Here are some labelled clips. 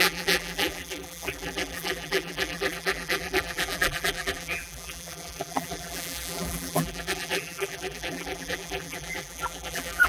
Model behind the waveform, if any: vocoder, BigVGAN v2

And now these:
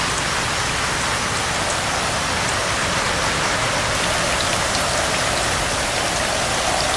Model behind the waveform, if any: none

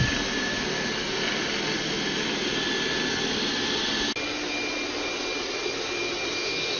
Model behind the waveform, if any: none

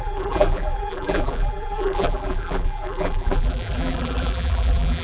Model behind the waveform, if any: vocoder, BigVGAN v2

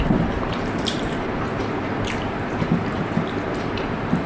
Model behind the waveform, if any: vocoder, BigVGAN v2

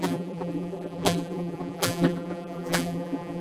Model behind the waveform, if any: vocoder, BigVGAN v2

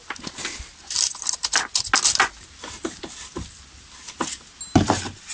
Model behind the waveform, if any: none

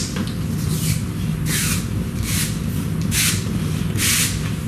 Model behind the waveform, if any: none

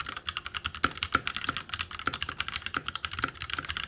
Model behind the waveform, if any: vocoder, BigVGAN v2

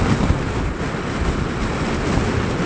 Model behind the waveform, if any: none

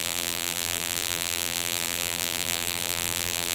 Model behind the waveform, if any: vocoder, BigVGAN v2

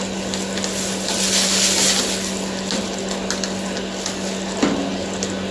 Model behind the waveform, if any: none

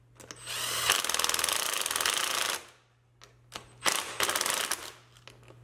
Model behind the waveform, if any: none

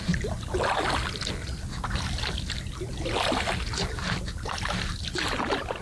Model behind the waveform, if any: none